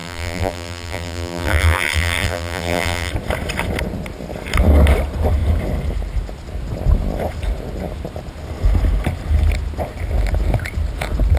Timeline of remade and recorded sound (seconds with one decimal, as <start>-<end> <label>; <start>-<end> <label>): 0.0-3.1 remade; 3.1-11.4 recorded